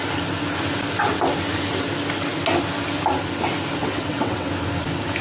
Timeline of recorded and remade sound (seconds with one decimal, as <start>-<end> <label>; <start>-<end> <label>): 0.0-3.8 recorded; 3.8-4.5 remade; 4.5-5.2 recorded